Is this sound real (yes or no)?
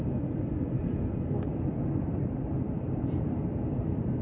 no